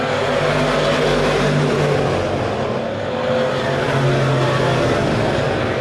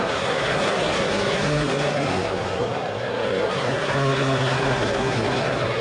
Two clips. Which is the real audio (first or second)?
first